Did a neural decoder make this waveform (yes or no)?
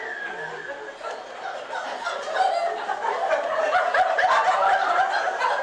no